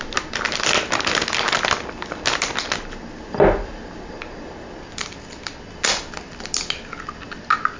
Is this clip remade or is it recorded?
recorded